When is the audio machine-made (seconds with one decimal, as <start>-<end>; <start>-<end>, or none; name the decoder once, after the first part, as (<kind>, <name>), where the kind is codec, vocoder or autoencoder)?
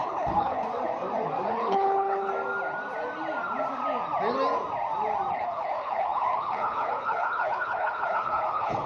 0.0-0.6 (codec, HILCodec); 1.5-2.3; 5.3-8.9